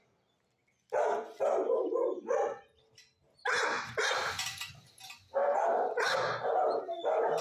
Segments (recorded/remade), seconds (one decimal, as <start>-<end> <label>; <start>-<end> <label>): 0.0-0.6 recorded; 0.6-2.6 remade; 2.6-7.4 recorded